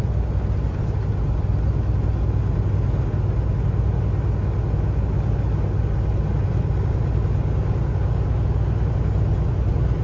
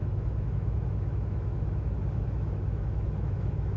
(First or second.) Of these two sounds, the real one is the first